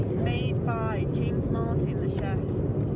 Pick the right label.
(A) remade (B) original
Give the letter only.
B